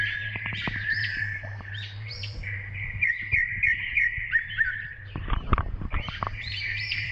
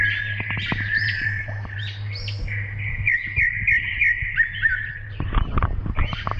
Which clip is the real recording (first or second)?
second